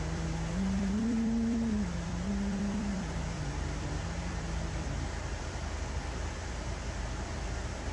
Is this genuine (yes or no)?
no